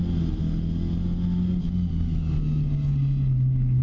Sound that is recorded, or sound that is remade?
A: recorded